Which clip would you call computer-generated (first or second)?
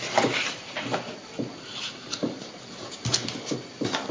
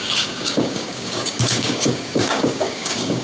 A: second